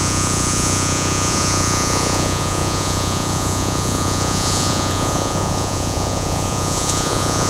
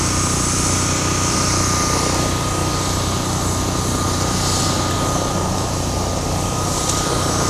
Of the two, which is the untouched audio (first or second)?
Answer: second